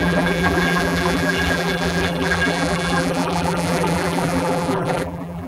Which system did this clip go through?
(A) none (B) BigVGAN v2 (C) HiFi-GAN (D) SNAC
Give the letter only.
B